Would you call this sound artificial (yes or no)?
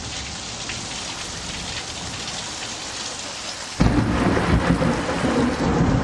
no